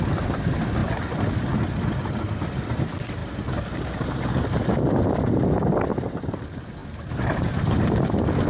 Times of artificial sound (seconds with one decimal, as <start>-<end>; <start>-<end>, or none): 6.8-7.9